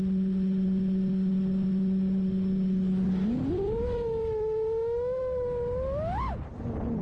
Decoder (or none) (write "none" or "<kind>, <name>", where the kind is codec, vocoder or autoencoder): none